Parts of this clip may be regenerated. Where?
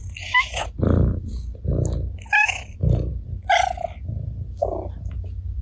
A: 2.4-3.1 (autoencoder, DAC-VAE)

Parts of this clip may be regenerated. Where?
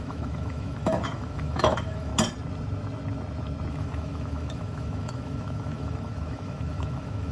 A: 0.0-2.1 (autoencoder, DAC-VAE); 3.7-7.3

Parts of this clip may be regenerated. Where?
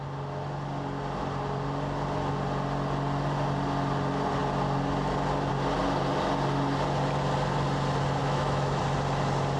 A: 8.2-8.8 (autoencoder, DAC-VAE)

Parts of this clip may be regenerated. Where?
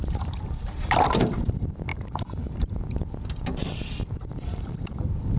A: none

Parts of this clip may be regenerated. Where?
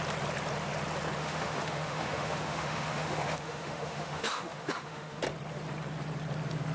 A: 1.2-5.2 (autoencoder, DAC-VAE)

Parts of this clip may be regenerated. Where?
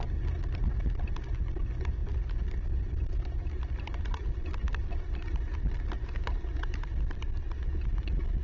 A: none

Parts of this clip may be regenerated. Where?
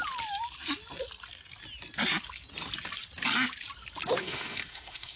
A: 4.2-5.2 (autoencoder, DAC-VAE)